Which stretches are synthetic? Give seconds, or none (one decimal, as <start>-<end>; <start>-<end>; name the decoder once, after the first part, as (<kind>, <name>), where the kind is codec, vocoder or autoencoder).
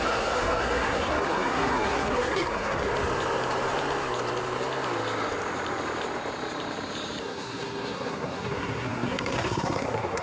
0.0-2.9 (codec, SNAC); 7.2-10.2